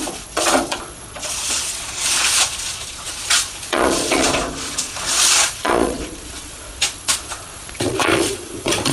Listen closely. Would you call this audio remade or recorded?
remade